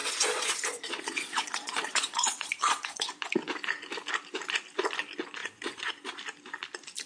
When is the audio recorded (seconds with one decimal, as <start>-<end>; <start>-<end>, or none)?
3.1-5.4; 6.2-7.1